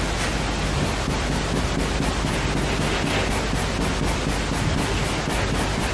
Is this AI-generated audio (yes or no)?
no